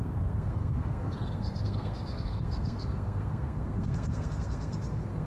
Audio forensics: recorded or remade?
remade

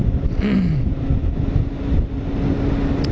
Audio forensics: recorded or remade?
recorded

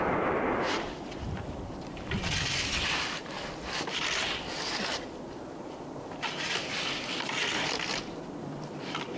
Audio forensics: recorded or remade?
remade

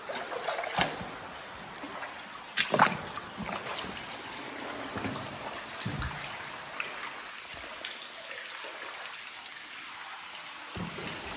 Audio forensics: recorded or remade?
recorded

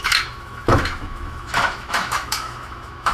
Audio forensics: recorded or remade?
remade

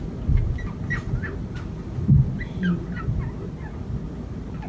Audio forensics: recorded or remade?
recorded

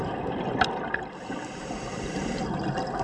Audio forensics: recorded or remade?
recorded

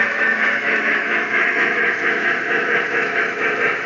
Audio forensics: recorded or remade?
remade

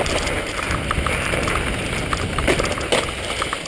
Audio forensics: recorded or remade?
recorded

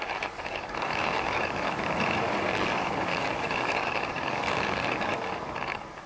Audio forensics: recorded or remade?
remade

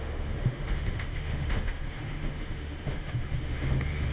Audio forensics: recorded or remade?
remade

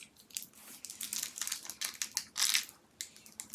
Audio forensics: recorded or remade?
recorded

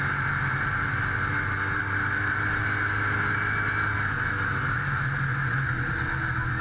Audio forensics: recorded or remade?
recorded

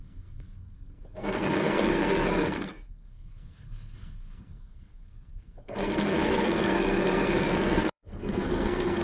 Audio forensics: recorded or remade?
remade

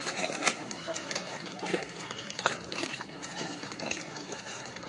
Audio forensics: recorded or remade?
remade